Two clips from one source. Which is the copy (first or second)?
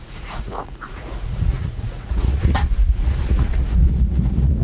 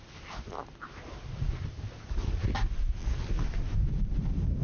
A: first